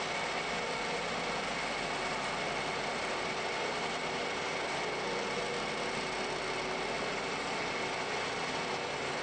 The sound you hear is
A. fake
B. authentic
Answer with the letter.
B